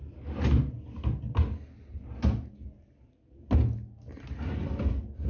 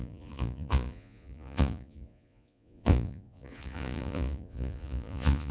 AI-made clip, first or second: second